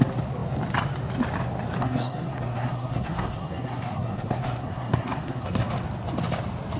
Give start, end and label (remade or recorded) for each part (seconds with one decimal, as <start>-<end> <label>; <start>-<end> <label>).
0.0-1.8 recorded; 1.8-5.7 remade; 5.7-6.8 recorded